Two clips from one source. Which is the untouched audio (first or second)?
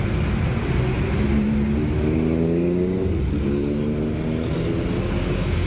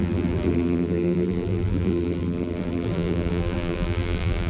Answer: first